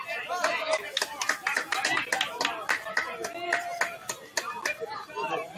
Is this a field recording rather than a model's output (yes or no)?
yes